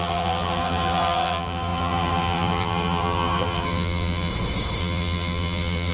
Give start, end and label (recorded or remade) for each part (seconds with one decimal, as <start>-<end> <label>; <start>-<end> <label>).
0.0-4.3 remade; 4.3-4.8 recorded; 4.8-5.9 remade